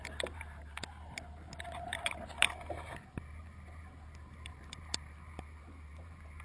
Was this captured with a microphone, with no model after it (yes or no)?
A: yes